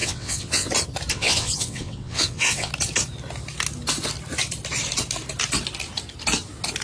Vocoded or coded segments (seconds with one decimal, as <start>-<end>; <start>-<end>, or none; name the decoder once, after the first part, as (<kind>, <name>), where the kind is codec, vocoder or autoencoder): 0.0-0.7 (vocoder, WaveNeXt); 1.1-2.7